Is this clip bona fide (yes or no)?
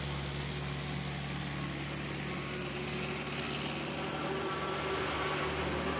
yes